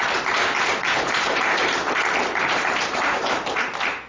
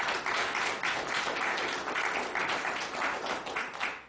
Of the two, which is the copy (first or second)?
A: first